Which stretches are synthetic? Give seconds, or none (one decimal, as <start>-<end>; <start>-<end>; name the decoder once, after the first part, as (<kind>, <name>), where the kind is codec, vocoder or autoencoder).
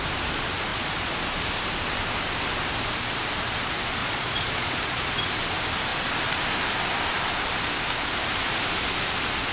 0.7-1.2 (vocoder, Vocos); 4.0-5.1